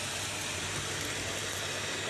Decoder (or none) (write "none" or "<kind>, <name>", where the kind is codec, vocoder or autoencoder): none